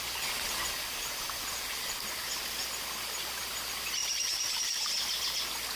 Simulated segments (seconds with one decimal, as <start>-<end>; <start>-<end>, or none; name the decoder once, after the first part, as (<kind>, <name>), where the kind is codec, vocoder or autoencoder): 4.0-4.6 (vocoder, BigVGAN v2)